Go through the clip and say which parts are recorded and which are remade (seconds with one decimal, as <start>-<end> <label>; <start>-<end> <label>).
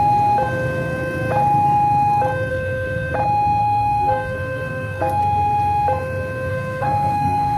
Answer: 0.0-2.5 recorded; 2.5-3.1 remade; 3.1-3.6 recorded; 3.6-5.2 remade; 5.2-6.5 recorded; 6.5-7.6 remade